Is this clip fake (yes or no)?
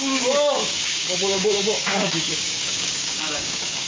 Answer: yes